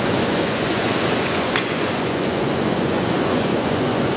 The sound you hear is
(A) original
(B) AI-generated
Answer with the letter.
B